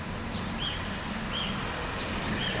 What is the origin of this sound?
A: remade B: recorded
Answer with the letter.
B